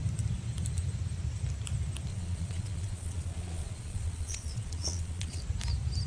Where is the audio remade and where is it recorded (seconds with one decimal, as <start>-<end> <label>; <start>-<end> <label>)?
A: 0.0-2.1 recorded; 2.1-5.4 remade; 5.4-6.1 recorded